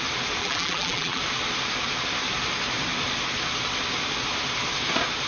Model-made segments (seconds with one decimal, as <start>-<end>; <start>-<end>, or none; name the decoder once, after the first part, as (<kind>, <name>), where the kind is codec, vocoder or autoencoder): 0.4-1.2 (vocoder, BigVGAN v2)